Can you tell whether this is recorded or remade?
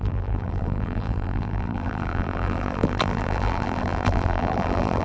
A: remade